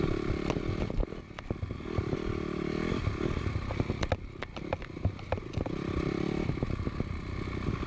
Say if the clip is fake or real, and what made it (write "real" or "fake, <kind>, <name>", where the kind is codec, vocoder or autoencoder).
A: real